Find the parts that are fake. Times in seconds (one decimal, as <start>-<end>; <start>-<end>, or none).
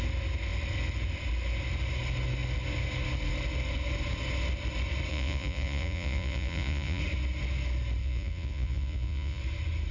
5.1-7.0; 8.0-9.4